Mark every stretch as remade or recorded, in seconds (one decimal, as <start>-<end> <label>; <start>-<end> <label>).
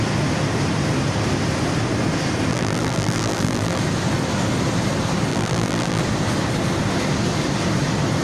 0.0-2.5 recorded; 2.5-3.8 remade; 3.8-5.3 recorded; 5.3-6.0 remade; 6.0-8.2 recorded